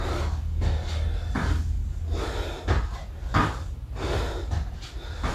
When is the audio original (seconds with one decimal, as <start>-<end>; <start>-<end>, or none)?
1.8-5.3